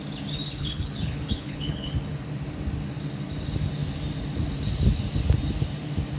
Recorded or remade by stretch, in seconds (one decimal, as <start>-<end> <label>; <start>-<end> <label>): 0.0-0.6 recorded; 0.6-1.9 remade; 1.9-6.2 recorded